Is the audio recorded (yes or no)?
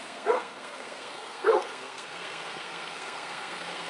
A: no